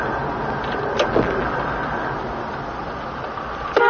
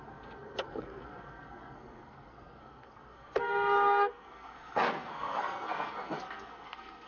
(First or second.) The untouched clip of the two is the first